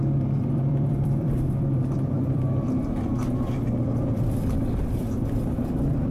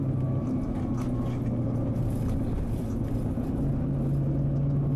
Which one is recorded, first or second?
second